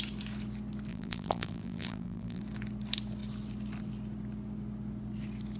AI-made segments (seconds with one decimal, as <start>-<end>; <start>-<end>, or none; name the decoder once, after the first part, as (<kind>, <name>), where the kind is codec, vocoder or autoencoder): 0.9-2.4 (vocoder, BigVGAN v2)